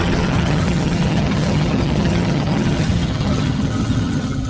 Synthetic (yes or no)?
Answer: yes